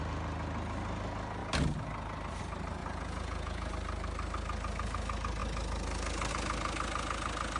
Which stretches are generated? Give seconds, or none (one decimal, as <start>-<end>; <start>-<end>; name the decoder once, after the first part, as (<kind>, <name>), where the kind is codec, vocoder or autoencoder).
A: 2.8-3.7 (vocoder, Vocos)